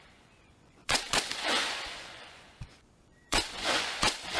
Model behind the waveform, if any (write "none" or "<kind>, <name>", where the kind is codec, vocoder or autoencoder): vocoder, Vocos